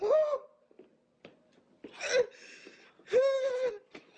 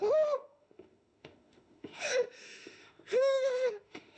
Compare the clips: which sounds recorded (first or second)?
first